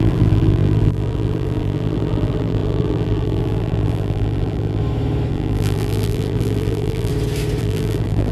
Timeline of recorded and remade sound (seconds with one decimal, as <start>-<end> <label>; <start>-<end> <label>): 0.0-4.8 remade; 4.8-5.3 recorded; 5.3-7.1 remade; 7.1-7.6 recorded; 7.6-8.3 remade